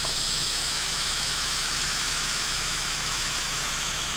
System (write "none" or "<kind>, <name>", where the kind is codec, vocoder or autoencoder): autoencoder, DAC-VAE